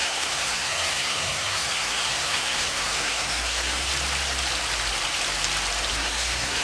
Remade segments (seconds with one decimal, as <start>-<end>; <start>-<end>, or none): 0.0-3.9; 5.9-6.6